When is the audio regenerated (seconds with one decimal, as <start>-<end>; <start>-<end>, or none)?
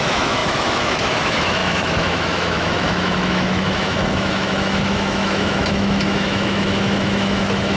0.0-7.8